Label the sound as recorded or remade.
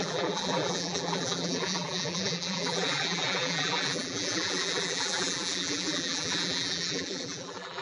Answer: remade